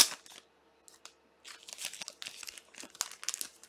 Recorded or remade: recorded